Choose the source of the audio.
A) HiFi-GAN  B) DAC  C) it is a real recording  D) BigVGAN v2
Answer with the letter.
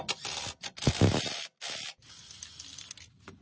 C